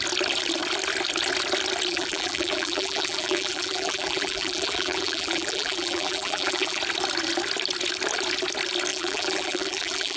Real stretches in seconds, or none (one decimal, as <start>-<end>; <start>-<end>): 0.0-1.9; 6.8-8.9

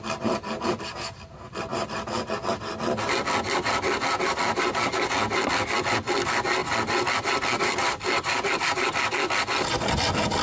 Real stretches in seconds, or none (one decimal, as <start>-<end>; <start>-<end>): 0.0-10.4

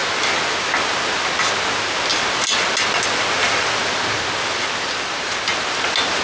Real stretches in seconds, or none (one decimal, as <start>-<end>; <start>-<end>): 0.0-6.2

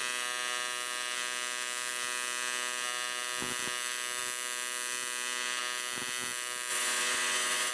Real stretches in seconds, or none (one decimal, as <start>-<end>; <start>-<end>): 0.0-6.7